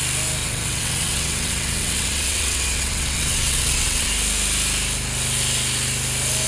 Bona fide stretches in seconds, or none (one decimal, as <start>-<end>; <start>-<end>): 0.0-0.4; 4.1-6.5